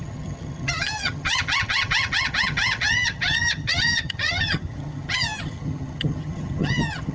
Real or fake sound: fake